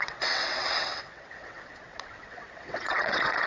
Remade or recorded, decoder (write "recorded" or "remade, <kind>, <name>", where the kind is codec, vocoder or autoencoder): remade, vocoder, WaveNeXt